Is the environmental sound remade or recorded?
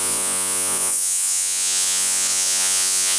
remade